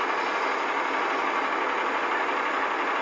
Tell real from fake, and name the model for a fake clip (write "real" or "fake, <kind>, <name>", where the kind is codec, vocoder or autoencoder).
real